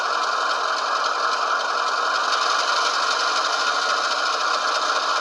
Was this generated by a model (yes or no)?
no